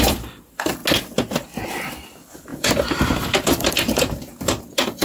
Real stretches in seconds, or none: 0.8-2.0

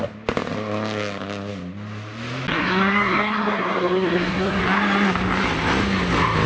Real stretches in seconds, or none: 0.0-2.5; 4.6-6.5

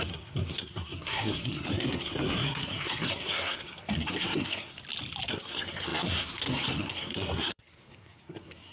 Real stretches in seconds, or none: 4.8-5.3

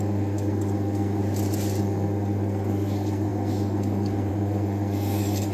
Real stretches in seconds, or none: 1.2-1.8